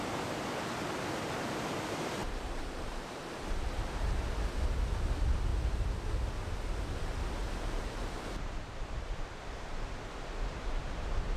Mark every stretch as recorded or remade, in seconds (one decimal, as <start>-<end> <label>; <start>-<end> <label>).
0.0-2.2 recorded; 2.2-4.2 remade; 4.2-7.4 recorded; 7.4-8.5 remade; 8.5-11.4 recorded